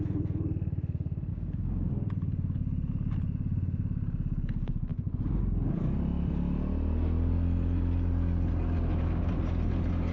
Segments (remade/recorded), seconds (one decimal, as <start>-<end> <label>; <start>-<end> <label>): 0.0-1.3 recorded; 1.3-1.9 remade; 1.9-10.1 recorded